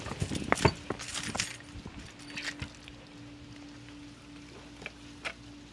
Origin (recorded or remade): recorded